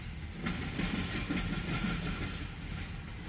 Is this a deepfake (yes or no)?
no